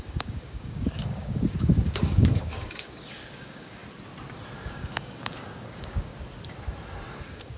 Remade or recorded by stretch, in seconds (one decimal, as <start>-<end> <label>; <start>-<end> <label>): 0.0-3.8 remade; 3.8-4.6 recorded; 4.6-6.1 remade; 6.1-7.1 recorded; 7.1-7.6 remade